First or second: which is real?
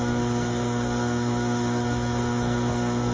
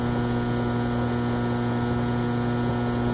second